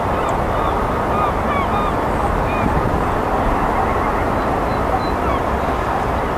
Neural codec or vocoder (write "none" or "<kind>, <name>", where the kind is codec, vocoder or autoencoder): none